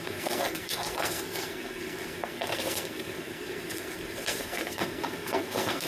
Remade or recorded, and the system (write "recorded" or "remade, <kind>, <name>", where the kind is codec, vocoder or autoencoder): remade, codec, SNAC